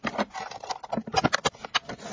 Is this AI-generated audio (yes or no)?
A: no